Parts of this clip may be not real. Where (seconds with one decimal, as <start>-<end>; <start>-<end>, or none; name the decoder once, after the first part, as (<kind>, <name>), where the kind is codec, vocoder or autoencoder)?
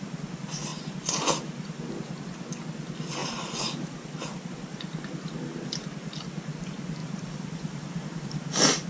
3.2-4.5 (vocoder, BigVGAN v2); 7.0-8.9